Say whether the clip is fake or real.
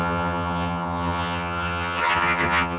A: fake